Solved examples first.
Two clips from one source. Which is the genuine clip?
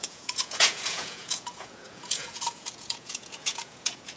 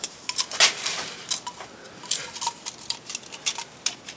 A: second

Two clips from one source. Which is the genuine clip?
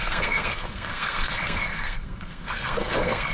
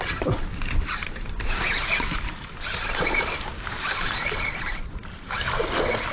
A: second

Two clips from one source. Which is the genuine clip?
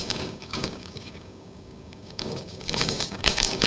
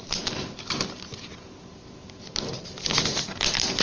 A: second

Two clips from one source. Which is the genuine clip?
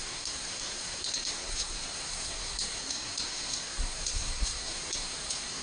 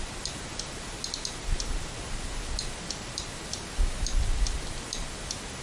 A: second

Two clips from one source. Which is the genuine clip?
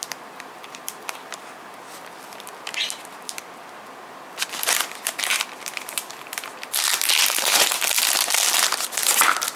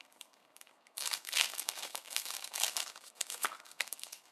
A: first